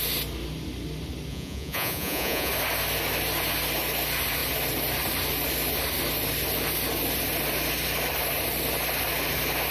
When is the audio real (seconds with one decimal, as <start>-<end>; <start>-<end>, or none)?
0.0-1.3; 2.5-9.7